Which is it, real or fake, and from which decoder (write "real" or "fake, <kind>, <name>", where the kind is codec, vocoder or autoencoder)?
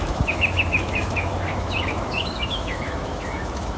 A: fake, autoencoder, DAC-VAE